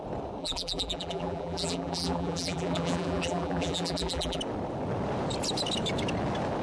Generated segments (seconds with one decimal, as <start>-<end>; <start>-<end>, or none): 0.4-4.4